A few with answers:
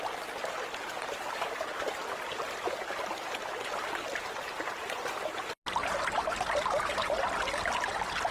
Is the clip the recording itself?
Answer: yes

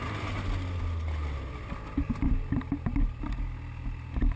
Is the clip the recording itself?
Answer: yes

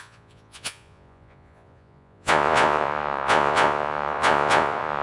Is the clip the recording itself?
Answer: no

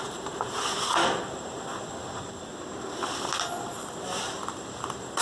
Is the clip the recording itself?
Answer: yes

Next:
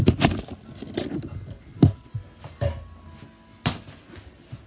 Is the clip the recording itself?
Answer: yes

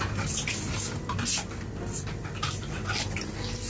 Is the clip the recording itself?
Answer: yes